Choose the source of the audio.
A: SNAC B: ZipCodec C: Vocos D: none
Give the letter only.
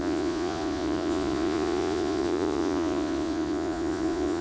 C